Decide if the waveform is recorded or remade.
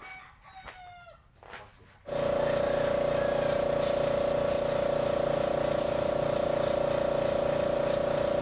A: recorded